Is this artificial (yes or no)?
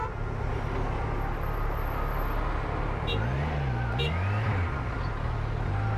no